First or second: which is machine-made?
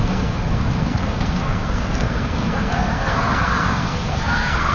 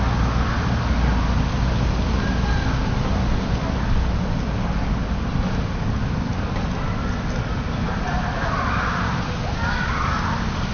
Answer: first